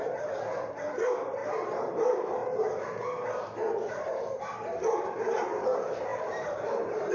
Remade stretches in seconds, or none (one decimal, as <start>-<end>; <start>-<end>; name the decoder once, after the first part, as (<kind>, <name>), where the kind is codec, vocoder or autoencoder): 0.0-1.4 (vocoder, BigVGAN v2); 1.9-2.4; 3.9-7.1